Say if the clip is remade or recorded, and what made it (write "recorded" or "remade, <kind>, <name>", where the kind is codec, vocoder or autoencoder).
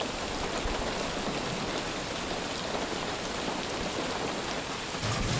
recorded